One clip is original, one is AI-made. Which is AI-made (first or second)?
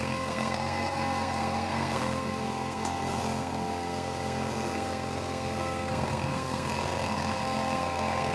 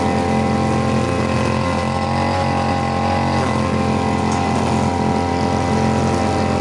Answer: first